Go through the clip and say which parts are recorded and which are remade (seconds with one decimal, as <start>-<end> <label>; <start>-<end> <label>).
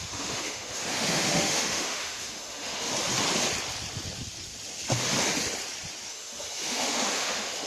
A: 0.0-2.9 remade; 2.9-6.1 recorded; 6.1-7.7 remade